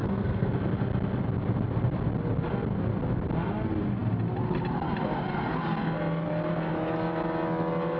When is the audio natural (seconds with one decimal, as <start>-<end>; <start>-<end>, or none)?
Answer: 0.5-8.0